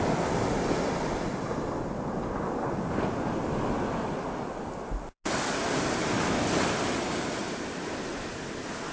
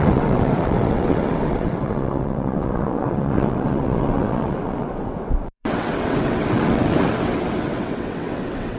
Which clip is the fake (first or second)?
second